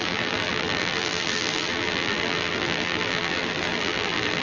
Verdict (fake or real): fake